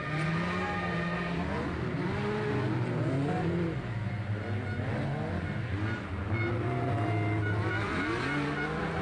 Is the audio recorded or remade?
recorded